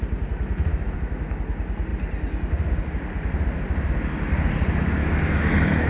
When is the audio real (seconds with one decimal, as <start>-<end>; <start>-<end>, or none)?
0.0-0.7; 1.4-5.0